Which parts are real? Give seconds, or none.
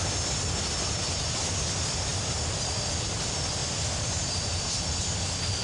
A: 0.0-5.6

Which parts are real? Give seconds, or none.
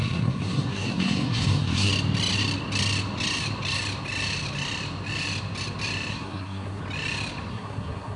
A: 1.9-6.1; 6.8-7.5